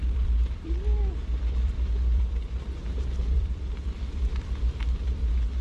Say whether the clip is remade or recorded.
remade